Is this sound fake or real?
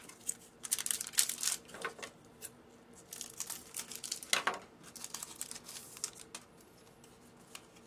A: real